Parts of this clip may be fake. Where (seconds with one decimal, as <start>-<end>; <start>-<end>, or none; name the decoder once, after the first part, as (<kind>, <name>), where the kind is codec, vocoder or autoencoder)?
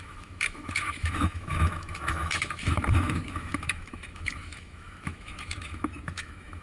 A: 0.0-6.6 (autoencoder, DAC-VAE)